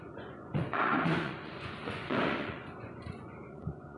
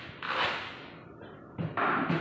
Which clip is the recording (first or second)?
second